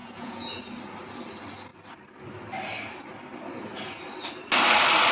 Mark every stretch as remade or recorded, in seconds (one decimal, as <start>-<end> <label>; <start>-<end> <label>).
0.0-0.6 remade; 0.6-5.1 recorded

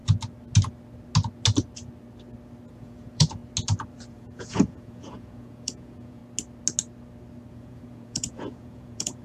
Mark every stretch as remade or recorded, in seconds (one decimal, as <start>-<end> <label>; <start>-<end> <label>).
0.0-2.7 recorded; 2.7-3.4 remade; 3.4-4.1 recorded; 4.1-6.2 remade; 6.2-7.5 recorded; 7.5-9.2 remade